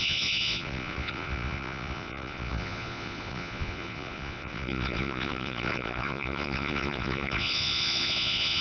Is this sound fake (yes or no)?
yes